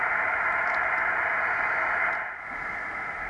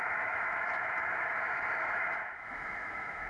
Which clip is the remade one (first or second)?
second